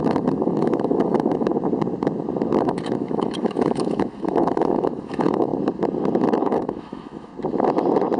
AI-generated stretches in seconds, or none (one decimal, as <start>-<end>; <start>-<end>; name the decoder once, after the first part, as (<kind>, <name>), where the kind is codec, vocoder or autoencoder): 0.0-1.5 (autoencoder, DAC-VAE); 2.6-5.5; 6.4-7.3